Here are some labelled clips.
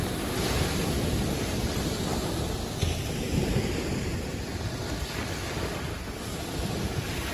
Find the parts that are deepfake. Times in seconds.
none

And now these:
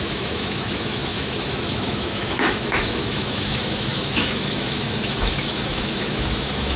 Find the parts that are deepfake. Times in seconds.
0.0-6.8 (autoencoder, DAC-VAE)

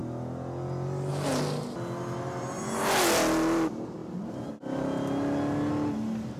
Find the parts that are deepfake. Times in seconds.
none

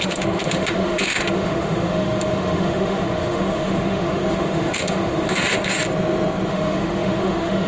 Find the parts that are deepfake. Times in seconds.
0.0-5.8 (autoencoder, DAC-VAE); 6.5-7.7

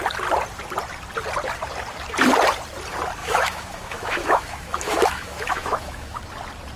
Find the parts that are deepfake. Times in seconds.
3.2-6.2 (autoencoder, DAC-VAE)